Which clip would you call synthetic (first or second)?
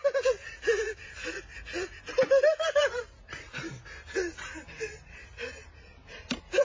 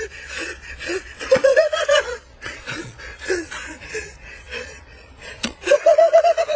second